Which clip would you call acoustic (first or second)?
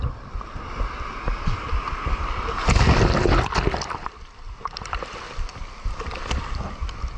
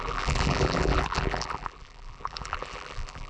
first